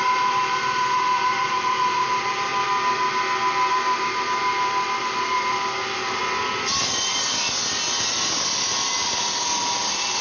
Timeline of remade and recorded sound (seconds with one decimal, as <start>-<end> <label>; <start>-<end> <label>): 0.0-2.5 remade; 2.5-3.7 recorded; 3.7-6.2 remade; 6.2-10.2 recorded